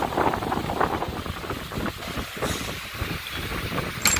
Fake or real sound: real